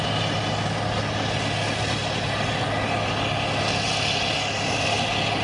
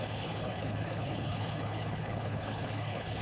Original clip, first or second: first